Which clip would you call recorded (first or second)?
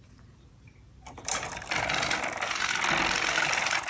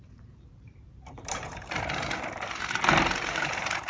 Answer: first